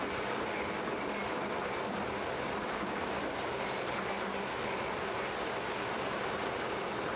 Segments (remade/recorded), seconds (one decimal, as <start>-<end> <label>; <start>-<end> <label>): 0.0-7.2 recorded